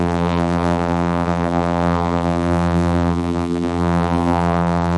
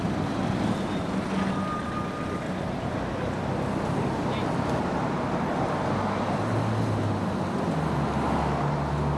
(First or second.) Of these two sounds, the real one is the second